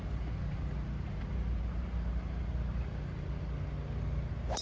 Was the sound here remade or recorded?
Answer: recorded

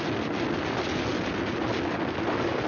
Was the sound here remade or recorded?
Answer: recorded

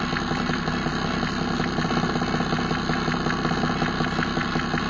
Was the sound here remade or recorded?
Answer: recorded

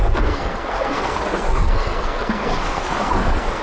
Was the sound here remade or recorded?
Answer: remade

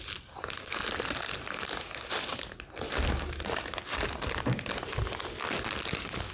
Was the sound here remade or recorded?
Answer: recorded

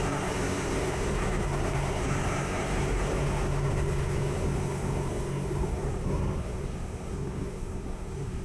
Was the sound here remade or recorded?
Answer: remade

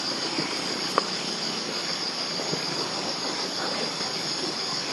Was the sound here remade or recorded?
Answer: remade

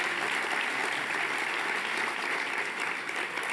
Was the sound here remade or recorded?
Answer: recorded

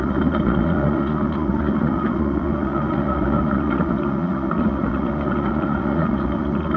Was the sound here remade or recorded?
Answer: remade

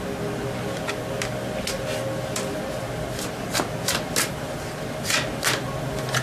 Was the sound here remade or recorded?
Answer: recorded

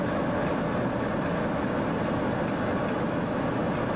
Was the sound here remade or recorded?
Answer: recorded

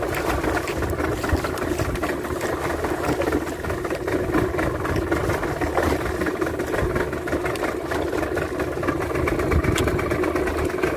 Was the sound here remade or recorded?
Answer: recorded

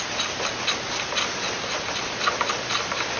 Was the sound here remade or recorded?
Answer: recorded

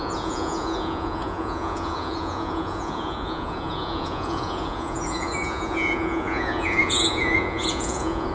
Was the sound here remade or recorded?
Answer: remade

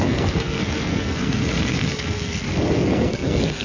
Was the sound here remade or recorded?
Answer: remade